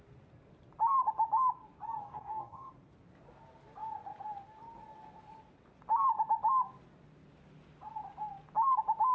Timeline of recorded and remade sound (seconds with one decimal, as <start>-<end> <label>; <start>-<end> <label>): 0.0-2.0 recorded; 2.0-2.7 remade; 2.7-9.1 recorded